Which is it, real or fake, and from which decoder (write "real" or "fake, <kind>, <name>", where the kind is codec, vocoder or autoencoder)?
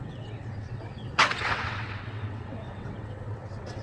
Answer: fake, vocoder, WaveNeXt